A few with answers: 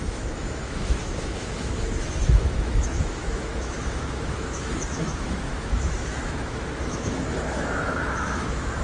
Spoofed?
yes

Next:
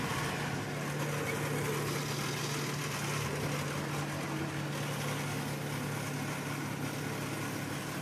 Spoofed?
no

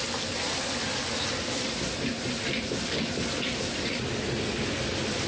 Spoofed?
no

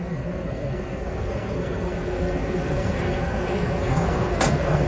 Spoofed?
yes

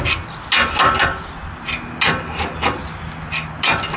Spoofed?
no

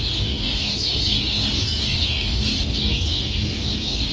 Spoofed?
yes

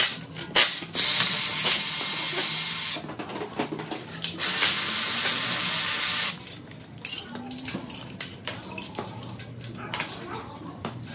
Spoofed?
no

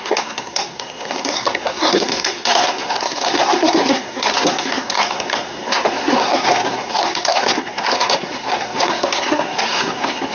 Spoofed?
yes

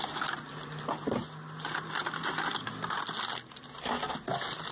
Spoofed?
no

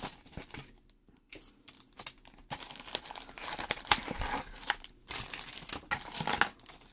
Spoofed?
no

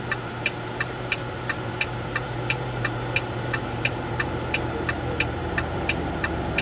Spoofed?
yes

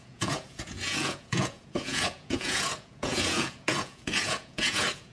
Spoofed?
yes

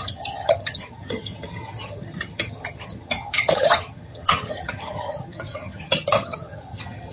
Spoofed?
yes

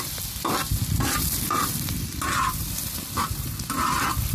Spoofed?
yes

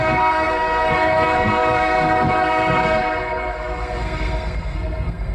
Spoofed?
yes